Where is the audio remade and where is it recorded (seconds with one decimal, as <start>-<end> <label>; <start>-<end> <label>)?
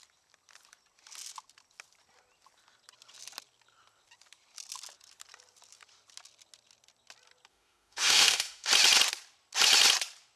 0.0-7.5 recorded; 7.5-8.7 remade; 8.7-10.4 recorded